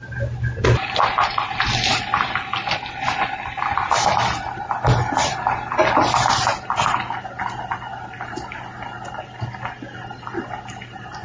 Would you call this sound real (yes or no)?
yes